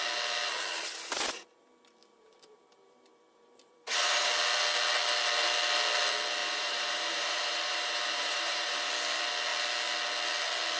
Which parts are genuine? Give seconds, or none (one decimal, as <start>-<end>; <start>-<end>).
0.0-2.0; 4.3-6.4; 8.9-10.8